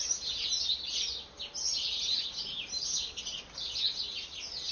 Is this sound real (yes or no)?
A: yes